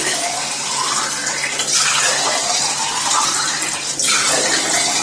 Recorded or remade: recorded